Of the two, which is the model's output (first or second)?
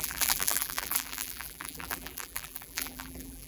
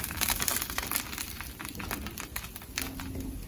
first